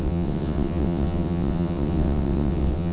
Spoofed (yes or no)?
yes